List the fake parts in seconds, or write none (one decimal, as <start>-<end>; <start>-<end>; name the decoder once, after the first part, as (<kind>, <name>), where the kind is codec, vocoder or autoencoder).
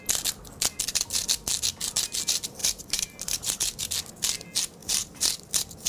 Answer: 2.6-3.9 (vocoder, BigVGAN v2); 4.8-5.9